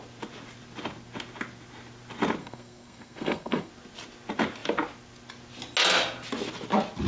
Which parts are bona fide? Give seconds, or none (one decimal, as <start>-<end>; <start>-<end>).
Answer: 0.0-2.4; 3.7-7.1